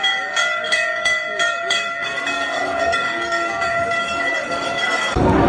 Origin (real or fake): fake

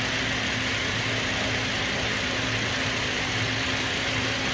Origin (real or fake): real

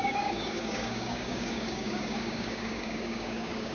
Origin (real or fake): fake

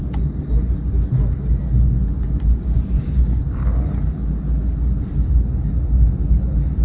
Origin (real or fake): real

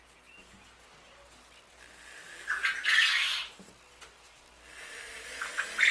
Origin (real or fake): real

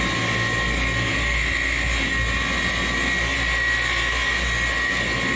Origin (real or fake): real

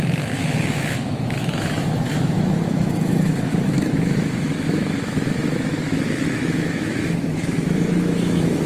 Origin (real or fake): fake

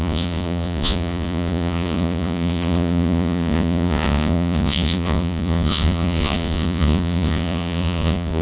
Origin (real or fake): fake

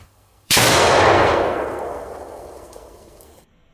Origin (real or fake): fake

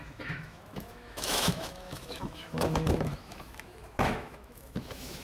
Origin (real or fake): fake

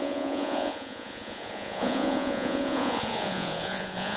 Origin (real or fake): fake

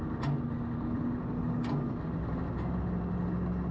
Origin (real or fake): real